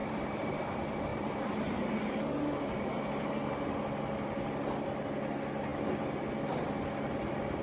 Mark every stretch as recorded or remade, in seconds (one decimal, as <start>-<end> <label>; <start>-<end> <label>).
0.0-0.6 remade; 0.6-1.1 recorded; 1.1-2.2 remade; 2.2-7.6 recorded